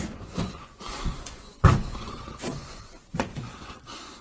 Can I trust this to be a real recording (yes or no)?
no